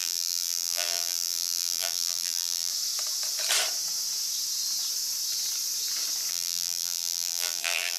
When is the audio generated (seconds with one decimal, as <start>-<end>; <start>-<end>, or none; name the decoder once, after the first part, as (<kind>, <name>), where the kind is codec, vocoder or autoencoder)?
0.0-2.7 (vocoder, BigVGAN v2); 6.3-8.0